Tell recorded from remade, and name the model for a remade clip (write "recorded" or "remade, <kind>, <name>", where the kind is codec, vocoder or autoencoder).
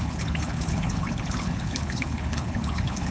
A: remade, codec, HILCodec